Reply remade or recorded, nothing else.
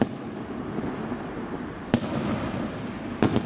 recorded